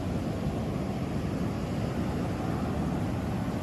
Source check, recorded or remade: recorded